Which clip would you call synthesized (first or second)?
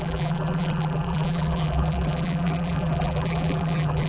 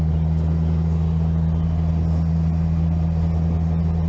first